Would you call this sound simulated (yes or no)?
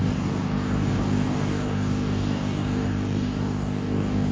yes